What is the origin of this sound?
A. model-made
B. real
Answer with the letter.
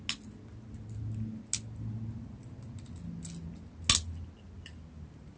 B